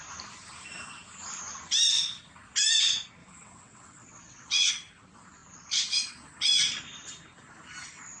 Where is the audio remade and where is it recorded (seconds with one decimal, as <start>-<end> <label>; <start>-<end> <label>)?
0.0-3.2 recorded; 3.2-4.7 remade; 4.7-8.2 recorded